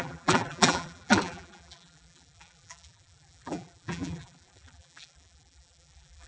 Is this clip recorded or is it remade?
remade